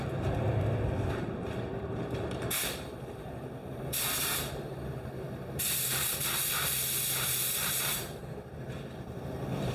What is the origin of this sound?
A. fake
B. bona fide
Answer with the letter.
A